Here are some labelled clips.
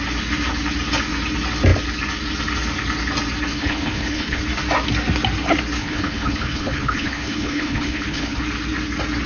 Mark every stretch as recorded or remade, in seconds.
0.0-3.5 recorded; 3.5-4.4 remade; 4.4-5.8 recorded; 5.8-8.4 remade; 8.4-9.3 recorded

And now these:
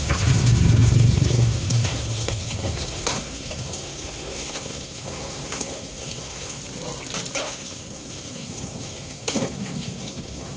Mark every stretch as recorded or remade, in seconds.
0.0-6.6 remade; 6.6-7.4 recorded; 7.4-10.6 remade

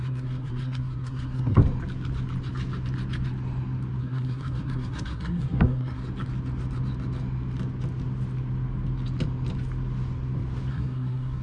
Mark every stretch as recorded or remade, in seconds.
0.0-1.6 remade; 1.6-4.0 recorded; 4.0-6.0 remade; 6.0-10.7 recorded; 10.7-11.4 remade

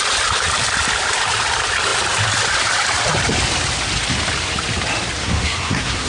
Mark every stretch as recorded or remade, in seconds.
0.0-5.2 recorded; 5.2-6.1 remade